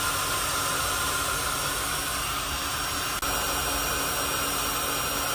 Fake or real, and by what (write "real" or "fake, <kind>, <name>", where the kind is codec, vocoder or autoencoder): real